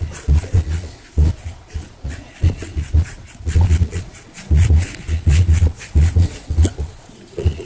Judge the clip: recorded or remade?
remade